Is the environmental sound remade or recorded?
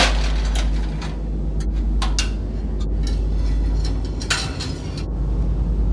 recorded